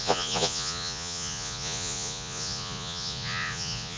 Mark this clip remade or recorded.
remade